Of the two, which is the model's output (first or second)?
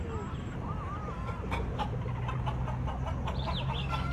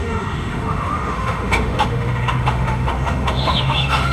second